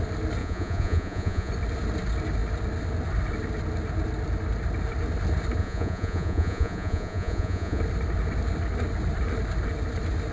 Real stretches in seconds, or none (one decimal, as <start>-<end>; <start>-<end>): 0.0-0.4; 1.5-5.6; 7.8-10.3